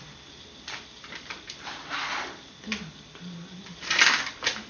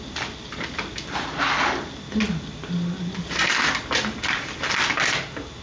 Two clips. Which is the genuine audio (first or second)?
second